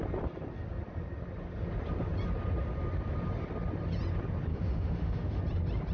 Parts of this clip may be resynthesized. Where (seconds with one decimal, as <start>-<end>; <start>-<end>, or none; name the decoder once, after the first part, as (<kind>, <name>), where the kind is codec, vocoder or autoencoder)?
4.5-5.4 (autoencoder, DAC-VAE)